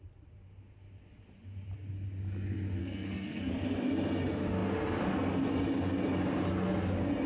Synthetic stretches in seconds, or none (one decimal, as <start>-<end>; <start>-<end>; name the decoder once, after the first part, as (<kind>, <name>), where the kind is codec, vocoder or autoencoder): 2.8-3.5 (codec, SNAC)